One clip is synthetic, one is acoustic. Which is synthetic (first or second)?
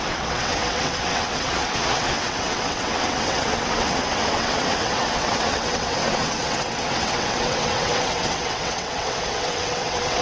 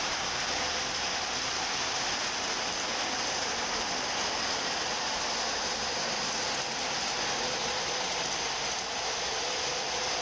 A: first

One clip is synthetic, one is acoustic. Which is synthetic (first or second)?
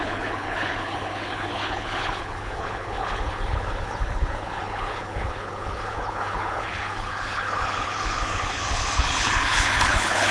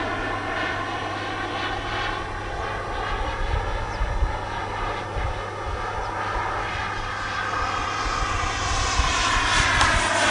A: first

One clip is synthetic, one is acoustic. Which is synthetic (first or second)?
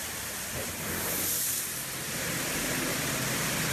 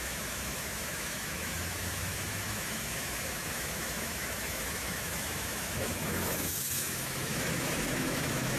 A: second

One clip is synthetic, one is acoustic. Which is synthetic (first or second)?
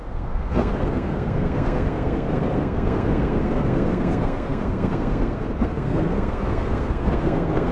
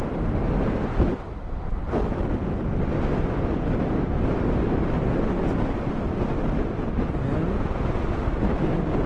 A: first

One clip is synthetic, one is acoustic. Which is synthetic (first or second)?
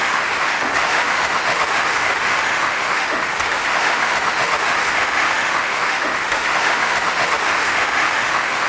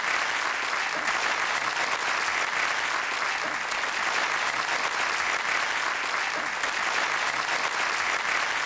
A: first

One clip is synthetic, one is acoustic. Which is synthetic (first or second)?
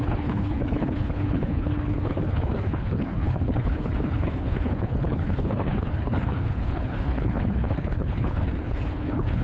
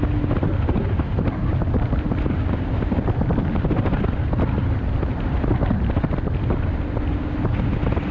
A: first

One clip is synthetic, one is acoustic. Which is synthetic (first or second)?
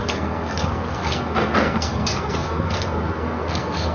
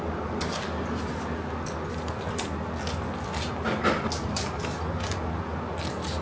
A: first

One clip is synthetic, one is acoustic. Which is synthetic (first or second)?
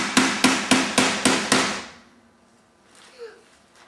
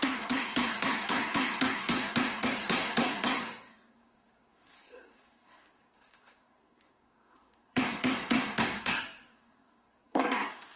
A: second